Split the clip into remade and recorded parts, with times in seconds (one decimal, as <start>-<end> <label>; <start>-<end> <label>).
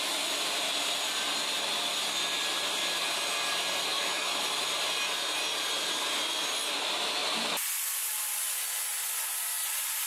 0.0-3.9 recorded; 3.9-4.4 remade; 4.4-10.1 recorded